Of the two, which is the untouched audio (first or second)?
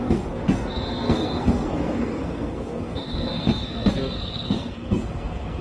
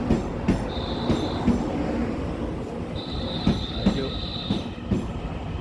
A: second